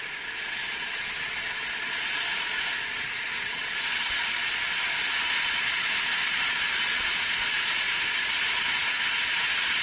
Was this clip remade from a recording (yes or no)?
yes